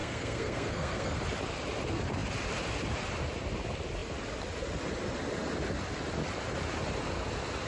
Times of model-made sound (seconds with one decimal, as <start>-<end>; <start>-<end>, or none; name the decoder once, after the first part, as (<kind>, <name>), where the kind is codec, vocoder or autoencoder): 0.0-1.2 (codec, SNAC)